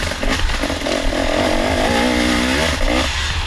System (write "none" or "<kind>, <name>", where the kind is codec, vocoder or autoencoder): none